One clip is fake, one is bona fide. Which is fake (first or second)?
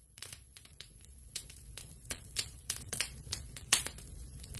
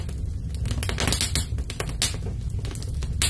first